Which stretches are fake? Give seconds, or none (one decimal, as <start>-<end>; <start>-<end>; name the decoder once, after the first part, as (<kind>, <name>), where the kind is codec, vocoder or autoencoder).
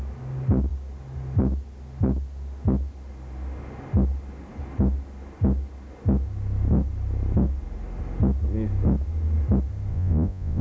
9.9-10.6 (vocoder, Vocos)